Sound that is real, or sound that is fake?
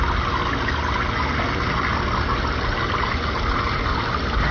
real